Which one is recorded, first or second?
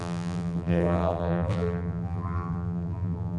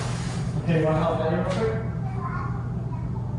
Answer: second